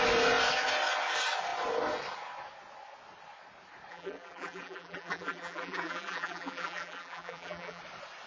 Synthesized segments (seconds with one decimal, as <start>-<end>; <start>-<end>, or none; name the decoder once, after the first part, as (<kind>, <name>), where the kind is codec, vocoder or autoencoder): 3.9-7.8 (vocoder, BigVGAN v2)

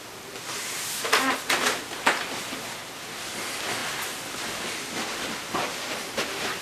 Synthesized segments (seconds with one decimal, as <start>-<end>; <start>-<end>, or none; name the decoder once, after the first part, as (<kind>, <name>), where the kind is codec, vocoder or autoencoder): none

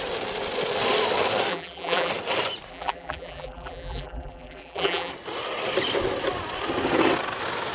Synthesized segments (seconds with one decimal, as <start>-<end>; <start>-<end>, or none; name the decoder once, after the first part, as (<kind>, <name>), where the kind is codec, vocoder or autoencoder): 1.5-2.1 (vocoder, BigVGAN v2); 2.7-5.1

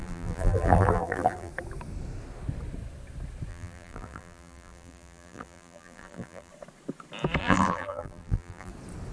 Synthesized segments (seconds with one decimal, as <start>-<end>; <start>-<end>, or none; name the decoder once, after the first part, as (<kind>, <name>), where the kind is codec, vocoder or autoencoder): 0.0-1.5 (vocoder, BigVGAN v2); 3.5-6.5; 7.4-8.7

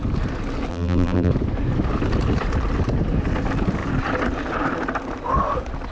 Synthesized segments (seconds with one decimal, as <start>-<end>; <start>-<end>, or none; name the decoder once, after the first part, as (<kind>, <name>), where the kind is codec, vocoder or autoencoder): 0.7-1.3 (vocoder, BigVGAN v2)

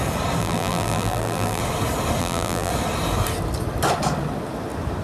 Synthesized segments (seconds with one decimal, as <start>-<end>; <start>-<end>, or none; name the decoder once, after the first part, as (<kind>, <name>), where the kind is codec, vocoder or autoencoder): 0.4-1.6 (vocoder, BigVGAN v2); 2.2-2.7

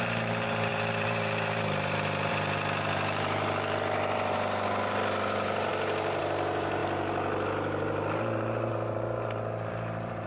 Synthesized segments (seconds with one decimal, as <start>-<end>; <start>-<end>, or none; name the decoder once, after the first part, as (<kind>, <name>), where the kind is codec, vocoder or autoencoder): 0.0-10.3 (vocoder, BigVGAN v2)